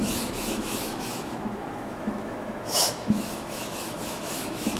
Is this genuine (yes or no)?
no